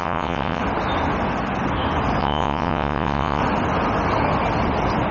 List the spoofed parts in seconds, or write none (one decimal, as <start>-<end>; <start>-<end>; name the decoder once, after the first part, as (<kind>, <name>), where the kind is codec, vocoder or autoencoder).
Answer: 0.0-0.6 (vocoder, WaveNeXt); 2.2-3.4